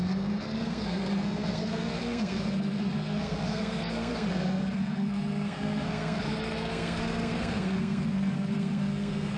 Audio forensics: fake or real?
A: fake